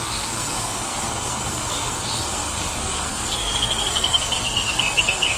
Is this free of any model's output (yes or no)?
no